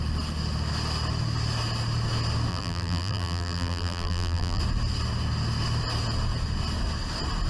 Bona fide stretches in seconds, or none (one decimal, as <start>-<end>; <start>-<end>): 0.0-2.5; 4.6-7.5